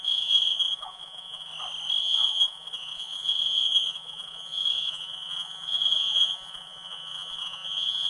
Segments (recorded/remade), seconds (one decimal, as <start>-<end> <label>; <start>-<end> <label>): 0.0-1.5 remade; 1.5-2.0 recorded; 2.0-8.1 remade

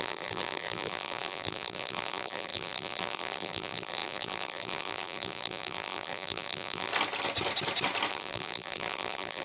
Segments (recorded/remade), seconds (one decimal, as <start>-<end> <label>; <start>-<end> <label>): 0.0-6.9 remade; 6.9-8.1 recorded; 8.1-9.4 remade

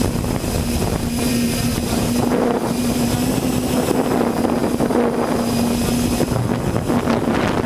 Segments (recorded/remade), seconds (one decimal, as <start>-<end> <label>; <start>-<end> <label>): 0.0-1.3 recorded; 1.3-3.1 remade; 3.1-7.7 recorded

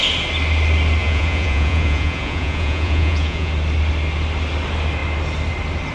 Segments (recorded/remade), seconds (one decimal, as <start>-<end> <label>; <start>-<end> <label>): 0.0-1.0 recorded; 1.0-3.5 remade; 3.5-5.9 recorded

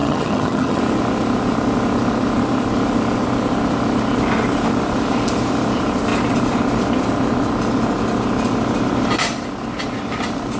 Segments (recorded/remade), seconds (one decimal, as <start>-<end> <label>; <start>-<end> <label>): 0.0-0.8 remade; 0.8-10.6 recorded

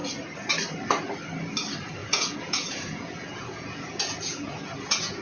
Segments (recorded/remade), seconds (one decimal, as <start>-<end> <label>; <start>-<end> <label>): 0.0-2.0 recorded; 2.0-5.2 remade

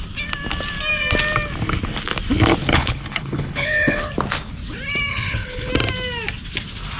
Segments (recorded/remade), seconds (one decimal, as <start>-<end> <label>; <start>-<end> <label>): 0.0-2.6 recorded; 2.6-4.1 remade; 4.1-5.1 recorded; 5.1-5.7 remade; 5.7-7.0 recorded

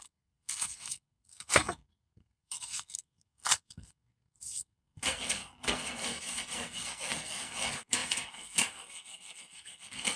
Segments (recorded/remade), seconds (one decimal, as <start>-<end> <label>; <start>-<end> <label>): 0.0-10.2 remade